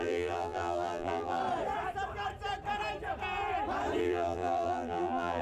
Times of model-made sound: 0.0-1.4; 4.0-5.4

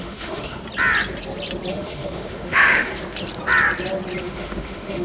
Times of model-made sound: 0.0-0.6; 1.7-2.9; 4.2-5.0